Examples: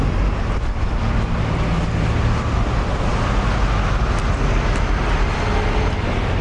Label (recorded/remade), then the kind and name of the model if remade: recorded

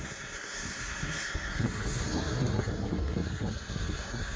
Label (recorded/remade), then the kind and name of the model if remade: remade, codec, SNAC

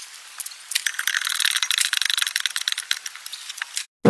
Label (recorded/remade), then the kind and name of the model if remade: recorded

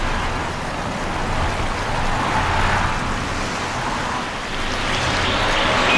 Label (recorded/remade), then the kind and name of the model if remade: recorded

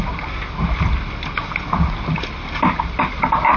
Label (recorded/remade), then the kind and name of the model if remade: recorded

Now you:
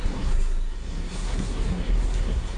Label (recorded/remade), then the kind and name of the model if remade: remade, codec, SNAC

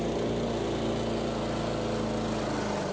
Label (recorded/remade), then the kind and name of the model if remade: recorded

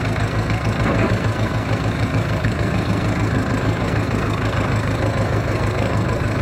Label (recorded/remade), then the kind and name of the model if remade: remade, codec, SNAC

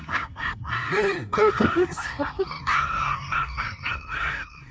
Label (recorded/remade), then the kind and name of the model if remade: remade, codec, SNAC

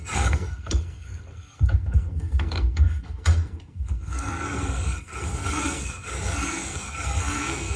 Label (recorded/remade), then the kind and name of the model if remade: remade, codec, SNAC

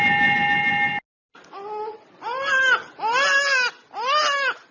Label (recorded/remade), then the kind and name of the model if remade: recorded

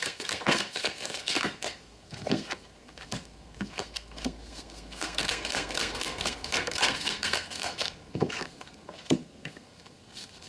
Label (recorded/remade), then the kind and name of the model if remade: remade, codec, SNAC